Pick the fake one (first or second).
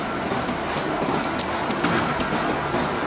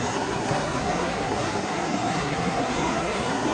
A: second